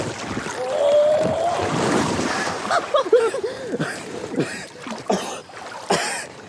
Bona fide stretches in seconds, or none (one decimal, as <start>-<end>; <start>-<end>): 0.0-0.8; 4.7-6.5